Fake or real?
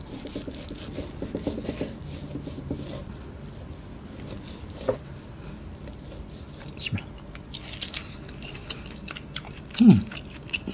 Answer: real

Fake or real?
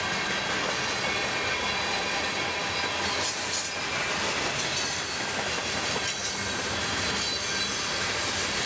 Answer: real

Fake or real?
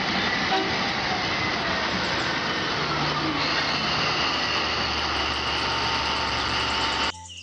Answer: real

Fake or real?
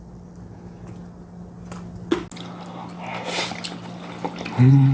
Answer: real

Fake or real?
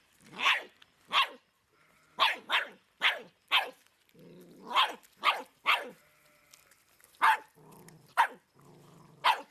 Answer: real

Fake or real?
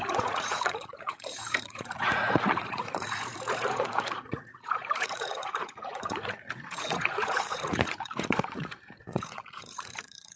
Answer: fake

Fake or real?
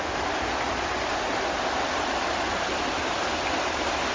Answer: real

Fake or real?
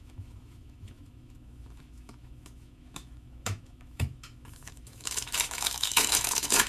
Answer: fake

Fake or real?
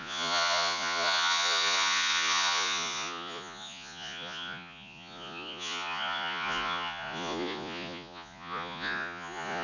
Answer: fake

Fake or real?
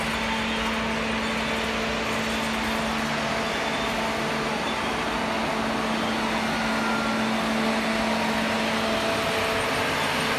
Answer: real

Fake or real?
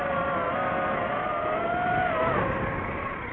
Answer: real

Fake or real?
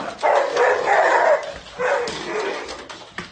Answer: real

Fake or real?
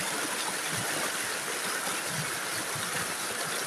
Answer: fake